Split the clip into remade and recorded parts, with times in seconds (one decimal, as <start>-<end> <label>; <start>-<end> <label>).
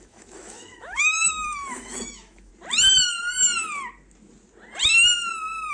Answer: 0.0-2.5 remade; 2.5-5.7 recorded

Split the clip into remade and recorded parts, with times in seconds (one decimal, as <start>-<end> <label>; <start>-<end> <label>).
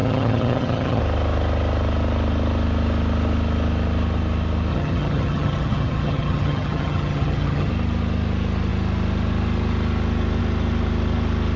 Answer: 0.0-1.0 remade; 1.0-4.7 recorded; 4.7-7.7 remade; 7.7-11.6 recorded